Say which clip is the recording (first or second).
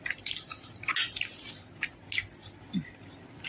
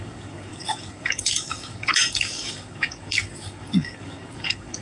first